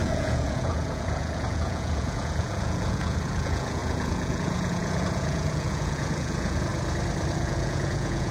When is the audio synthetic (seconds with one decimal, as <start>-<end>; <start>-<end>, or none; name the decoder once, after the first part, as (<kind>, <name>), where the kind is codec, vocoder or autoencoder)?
0.0-6.7 (vocoder, Vocos); 7.3-8.3